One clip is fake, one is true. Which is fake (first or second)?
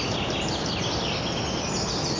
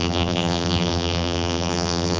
second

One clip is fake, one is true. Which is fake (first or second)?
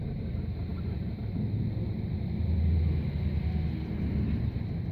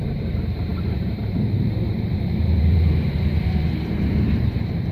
second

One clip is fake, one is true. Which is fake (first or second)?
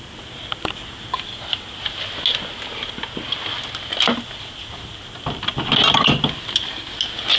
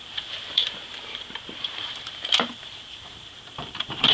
second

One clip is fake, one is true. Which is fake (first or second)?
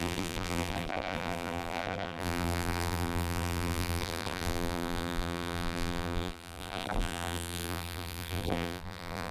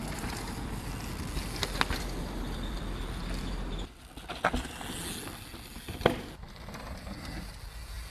first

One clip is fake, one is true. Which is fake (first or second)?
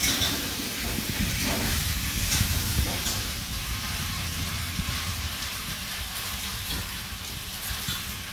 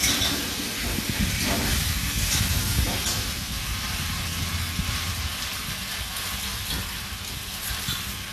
first